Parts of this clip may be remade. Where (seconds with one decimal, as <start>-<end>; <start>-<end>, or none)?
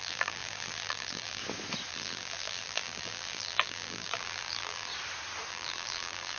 0.0-1.4; 1.9-4.9; 5.5-6.4